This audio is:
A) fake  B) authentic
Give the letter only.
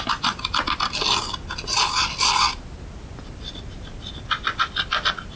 B